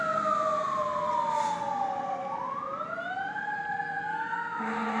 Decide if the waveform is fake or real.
real